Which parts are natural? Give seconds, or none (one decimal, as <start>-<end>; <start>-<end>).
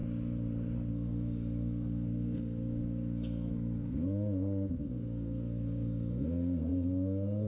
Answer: 0.0-0.9